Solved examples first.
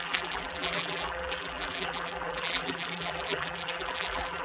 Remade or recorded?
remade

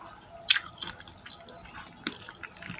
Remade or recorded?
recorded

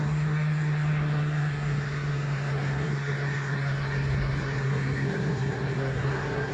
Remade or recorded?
remade